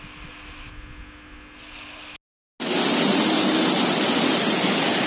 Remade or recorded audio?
recorded